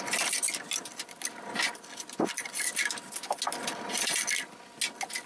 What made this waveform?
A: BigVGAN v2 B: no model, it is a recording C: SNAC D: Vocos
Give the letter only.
B